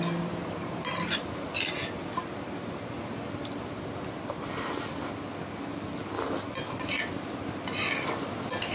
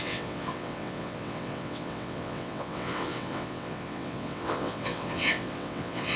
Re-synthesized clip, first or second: second